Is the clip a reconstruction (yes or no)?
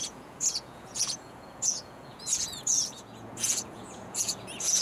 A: yes